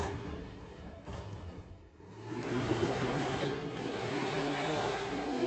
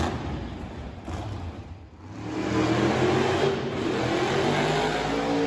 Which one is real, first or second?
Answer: second